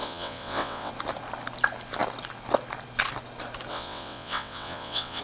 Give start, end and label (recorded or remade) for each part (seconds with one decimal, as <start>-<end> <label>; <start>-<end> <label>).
0.0-0.9 remade; 0.9-3.7 recorded; 3.7-5.2 remade